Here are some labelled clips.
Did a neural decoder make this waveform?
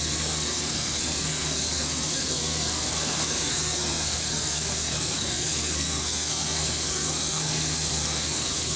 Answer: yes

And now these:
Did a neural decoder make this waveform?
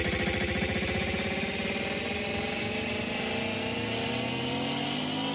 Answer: no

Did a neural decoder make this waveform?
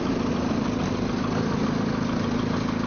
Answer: no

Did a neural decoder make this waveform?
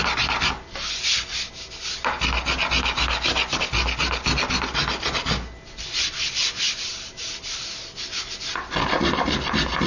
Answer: no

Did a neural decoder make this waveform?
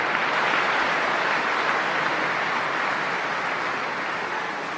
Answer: no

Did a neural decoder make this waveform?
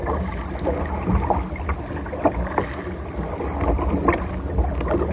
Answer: no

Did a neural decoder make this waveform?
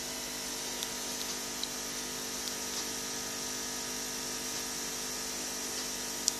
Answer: no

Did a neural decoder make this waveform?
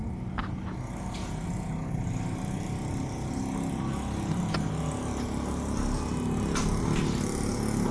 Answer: no